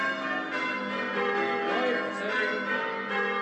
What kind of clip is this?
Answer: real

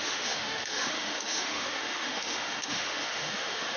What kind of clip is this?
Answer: fake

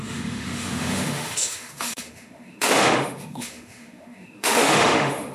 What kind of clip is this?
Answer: fake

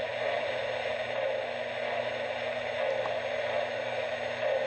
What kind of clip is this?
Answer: real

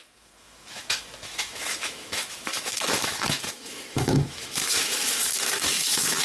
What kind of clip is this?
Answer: fake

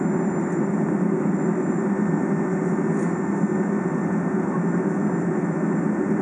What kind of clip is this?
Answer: real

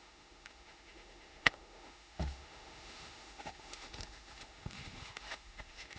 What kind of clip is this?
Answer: fake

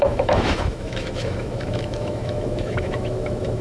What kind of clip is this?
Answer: fake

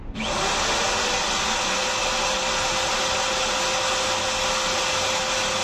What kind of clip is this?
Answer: real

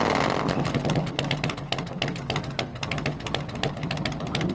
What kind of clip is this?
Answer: real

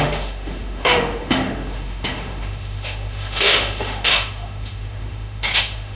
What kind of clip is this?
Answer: fake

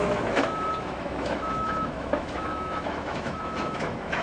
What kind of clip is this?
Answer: fake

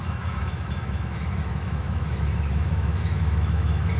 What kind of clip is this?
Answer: fake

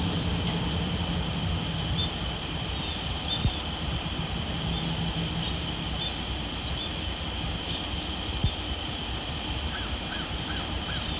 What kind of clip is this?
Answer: real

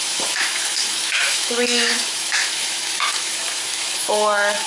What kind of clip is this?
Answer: fake